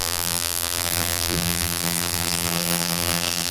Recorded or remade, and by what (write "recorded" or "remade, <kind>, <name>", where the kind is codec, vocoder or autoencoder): remade, vocoder, BigVGAN v2